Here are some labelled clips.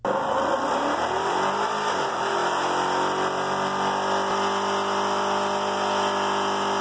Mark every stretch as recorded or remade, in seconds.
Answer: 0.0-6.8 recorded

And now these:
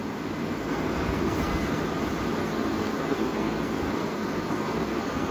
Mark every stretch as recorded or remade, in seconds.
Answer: 0.0-0.4 recorded; 0.4-1.8 remade; 1.8-2.4 recorded; 2.4-5.3 remade

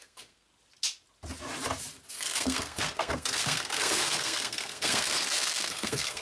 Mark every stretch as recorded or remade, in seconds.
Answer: 0.0-0.5 remade; 0.5-2.1 recorded; 2.1-6.2 remade

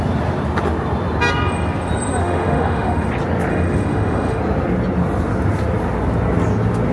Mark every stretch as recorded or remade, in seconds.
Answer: 0.0-2.2 recorded; 2.2-3.1 remade; 3.1-3.5 recorded; 3.5-4.4 remade; 4.4-6.9 recorded

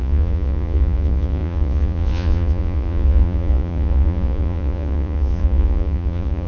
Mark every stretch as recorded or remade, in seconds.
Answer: 0.0-6.5 remade

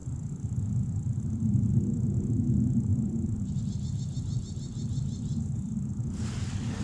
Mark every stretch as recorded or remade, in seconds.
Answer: 0.0-6.8 recorded

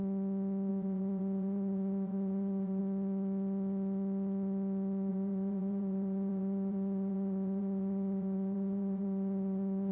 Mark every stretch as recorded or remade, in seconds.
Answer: 0.0-0.7 recorded; 0.7-2.8 remade; 2.8-5.1 recorded; 5.1-9.9 remade